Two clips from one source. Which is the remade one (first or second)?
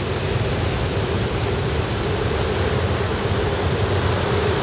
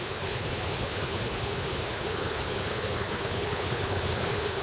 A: second